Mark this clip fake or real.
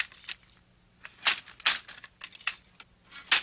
real